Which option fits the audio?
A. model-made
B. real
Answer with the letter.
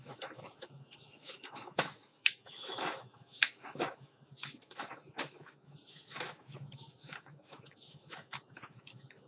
A